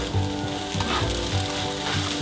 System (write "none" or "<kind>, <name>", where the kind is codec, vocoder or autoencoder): none